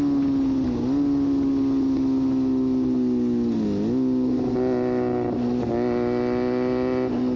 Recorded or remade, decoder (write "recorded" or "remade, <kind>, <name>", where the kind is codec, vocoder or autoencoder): recorded